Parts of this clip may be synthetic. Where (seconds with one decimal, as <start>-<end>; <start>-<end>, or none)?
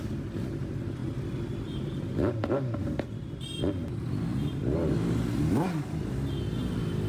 none